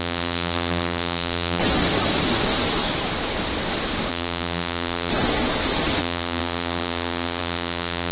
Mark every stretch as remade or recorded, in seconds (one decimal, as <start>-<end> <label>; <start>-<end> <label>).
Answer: 0.0-1.6 remade; 1.6-4.1 recorded; 4.1-5.1 remade; 5.1-6.0 recorded; 6.0-8.1 remade